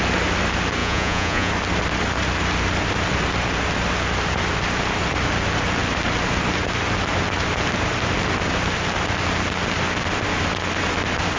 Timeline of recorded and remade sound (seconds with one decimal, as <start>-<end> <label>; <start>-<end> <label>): 0.0-0.8 recorded; 0.8-1.5 remade; 1.5-11.4 recorded